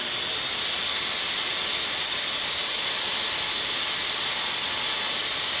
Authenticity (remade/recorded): recorded